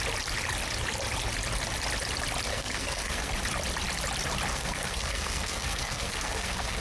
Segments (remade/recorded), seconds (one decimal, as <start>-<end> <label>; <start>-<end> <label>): 0.0-2.5 recorded; 2.5-3.3 remade; 3.3-4.5 recorded; 4.5-6.8 remade